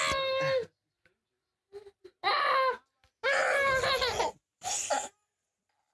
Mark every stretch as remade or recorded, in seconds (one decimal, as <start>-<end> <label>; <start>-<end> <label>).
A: 0.0-5.9 recorded